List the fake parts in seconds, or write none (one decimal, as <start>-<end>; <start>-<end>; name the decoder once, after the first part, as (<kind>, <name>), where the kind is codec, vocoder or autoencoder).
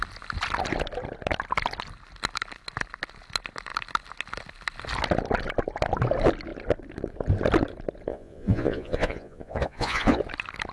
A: 8.1-10.2 (vocoder, Vocos)